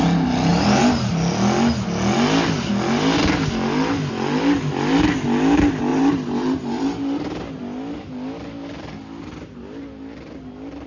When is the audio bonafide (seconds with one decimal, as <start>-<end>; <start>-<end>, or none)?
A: 0.0-0.5; 1.1-5.9; 7.5-10.9